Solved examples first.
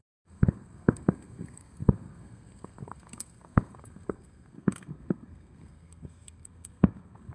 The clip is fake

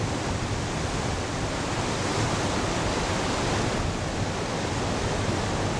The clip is real